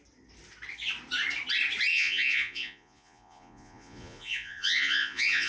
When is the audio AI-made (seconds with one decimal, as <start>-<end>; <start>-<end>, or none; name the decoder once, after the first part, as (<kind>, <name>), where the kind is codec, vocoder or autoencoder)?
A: 1.9-5.5 (vocoder, Vocos)